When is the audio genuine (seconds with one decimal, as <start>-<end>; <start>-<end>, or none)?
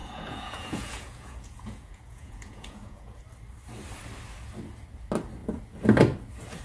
3.2-6.6